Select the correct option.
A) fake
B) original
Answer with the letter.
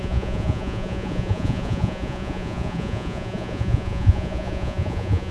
A